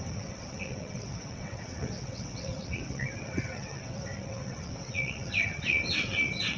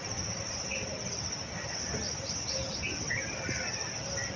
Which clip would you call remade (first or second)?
first